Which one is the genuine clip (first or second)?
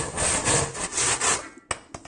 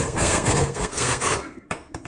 first